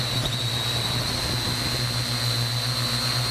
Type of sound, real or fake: real